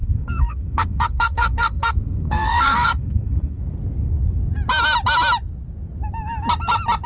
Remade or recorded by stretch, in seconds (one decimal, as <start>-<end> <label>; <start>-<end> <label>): 0.0-3.6 remade; 3.6-7.1 recorded